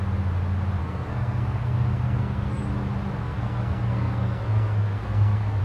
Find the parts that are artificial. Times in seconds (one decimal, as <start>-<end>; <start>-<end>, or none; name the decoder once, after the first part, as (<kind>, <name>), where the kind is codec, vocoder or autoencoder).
0.8-2.6 (codec, SNAC); 3.2-5.6

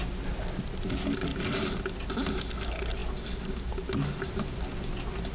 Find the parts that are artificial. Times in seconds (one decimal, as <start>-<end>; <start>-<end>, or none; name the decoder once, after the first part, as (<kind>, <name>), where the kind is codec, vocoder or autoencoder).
0.0-1.3 (vocoder, BigVGAN v2); 2.5-3.0; 3.7-5.3

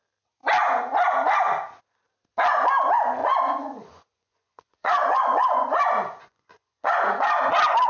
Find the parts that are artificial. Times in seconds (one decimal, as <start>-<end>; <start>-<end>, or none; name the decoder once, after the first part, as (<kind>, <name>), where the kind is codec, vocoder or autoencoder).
3.2-7.5 (vocoder, Vocos)

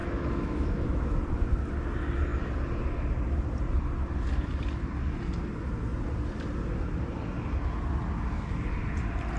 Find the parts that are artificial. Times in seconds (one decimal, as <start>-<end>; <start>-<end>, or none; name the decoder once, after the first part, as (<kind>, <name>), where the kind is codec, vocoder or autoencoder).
0.0-1.2 (autoencoder, DAC-VAE)

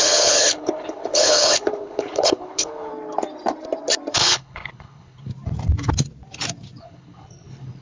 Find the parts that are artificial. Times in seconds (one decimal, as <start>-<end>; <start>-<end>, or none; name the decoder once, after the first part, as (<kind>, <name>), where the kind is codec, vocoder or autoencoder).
0.0-2.9 (codec, HILCodec); 4.1-5.3; 6.8-7.8

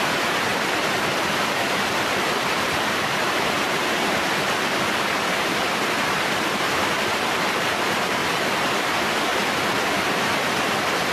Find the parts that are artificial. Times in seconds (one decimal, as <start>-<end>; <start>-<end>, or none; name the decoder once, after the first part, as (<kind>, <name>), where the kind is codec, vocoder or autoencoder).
0.0-8.2 (vocoder, BigVGAN v2); 8.8-9.3; 9.9-11.1